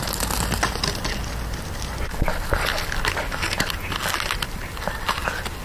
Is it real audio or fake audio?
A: real